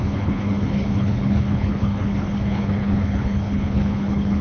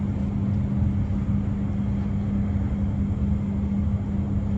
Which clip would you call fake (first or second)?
first